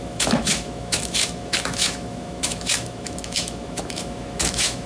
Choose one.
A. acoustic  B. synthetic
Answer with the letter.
B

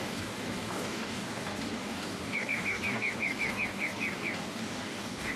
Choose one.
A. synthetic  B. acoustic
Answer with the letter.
A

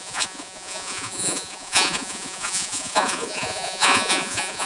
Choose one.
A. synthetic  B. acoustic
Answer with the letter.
A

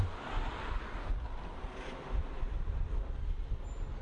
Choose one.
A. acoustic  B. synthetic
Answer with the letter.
A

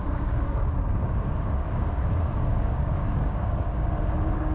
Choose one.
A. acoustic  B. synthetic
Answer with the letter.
B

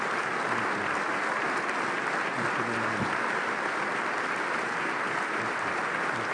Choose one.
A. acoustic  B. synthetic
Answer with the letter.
A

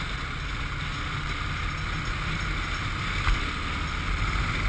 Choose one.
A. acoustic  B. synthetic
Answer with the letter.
A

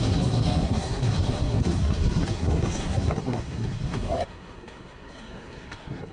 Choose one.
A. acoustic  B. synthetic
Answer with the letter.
B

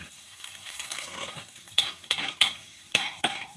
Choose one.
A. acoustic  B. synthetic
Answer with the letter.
B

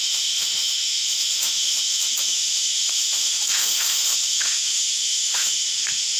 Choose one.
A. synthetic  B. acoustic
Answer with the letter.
A